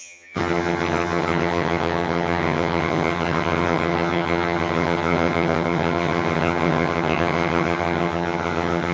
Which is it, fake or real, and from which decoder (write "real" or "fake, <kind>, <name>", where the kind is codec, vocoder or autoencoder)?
fake, vocoder, HiFi-GAN